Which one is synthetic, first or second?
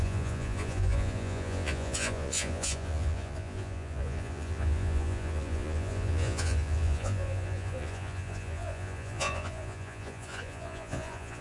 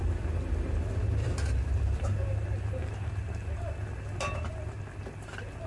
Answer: first